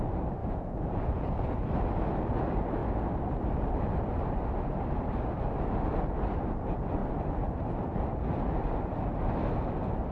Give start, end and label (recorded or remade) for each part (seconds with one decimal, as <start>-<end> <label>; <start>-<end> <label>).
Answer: 0.0-0.4 recorded; 0.4-1.6 remade; 1.6-10.1 recorded